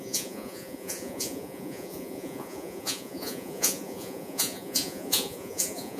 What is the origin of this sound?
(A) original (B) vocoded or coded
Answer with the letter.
B